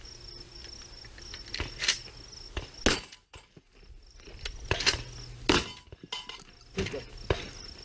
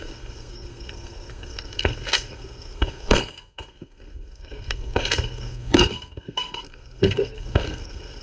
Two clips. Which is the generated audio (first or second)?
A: second